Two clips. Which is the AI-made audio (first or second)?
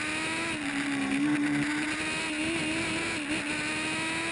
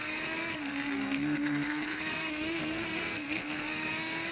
second